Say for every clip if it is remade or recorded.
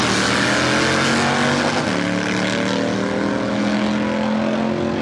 recorded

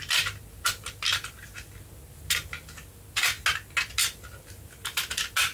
recorded